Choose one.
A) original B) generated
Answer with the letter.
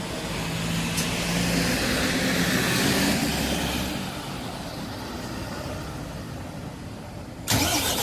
A